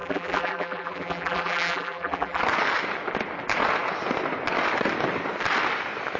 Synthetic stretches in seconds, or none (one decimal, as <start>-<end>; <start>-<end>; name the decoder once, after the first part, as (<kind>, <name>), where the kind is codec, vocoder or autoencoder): 0.0-2.4 (vocoder, BigVGAN v2)